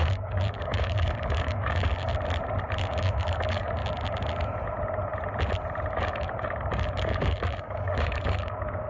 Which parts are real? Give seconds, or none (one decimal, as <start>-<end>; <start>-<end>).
2.1-2.8; 3.8-5.9